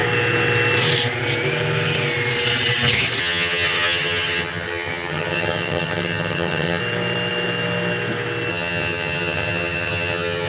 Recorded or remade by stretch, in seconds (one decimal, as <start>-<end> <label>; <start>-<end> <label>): 0.0-3.2 recorded; 3.2-6.8 remade; 6.8-8.5 recorded; 8.5-10.5 remade